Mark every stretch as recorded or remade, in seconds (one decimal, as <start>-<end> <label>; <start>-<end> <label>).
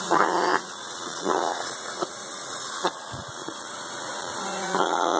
0.0-5.2 remade